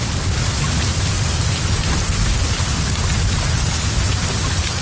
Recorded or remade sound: recorded